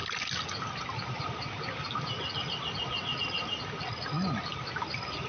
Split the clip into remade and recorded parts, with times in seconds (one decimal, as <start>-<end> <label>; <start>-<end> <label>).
0.0-5.3 recorded

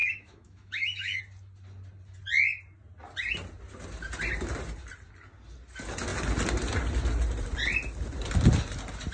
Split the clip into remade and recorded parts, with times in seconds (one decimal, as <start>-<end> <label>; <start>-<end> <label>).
0.0-1.2 remade; 1.2-9.1 recorded

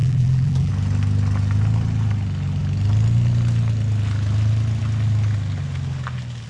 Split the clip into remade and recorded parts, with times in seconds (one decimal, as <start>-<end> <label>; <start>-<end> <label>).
0.0-0.7 remade; 0.7-6.5 recorded

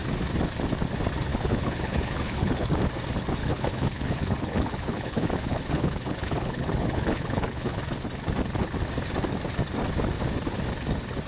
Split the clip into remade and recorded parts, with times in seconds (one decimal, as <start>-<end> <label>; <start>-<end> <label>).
0.0-1.3 recorded; 1.3-2.7 remade; 2.7-3.4 recorded; 3.4-7.8 remade; 7.8-11.3 recorded